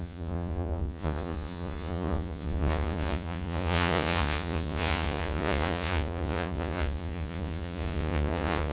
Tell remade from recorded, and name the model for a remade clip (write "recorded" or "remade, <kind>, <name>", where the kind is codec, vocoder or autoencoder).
remade, vocoder, Vocos